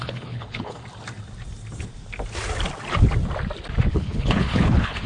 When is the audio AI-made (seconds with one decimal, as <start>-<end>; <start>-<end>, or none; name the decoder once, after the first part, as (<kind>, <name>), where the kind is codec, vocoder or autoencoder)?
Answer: 0.0-0.8 (codec, HILCodec); 3.9-5.1